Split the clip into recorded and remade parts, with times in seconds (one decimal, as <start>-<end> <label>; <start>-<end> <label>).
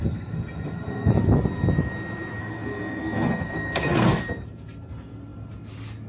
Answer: 0.0-1.1 remade; 1.1-2.4 recorded; 2.4-4.2 remade; 4.2-6.1 recorded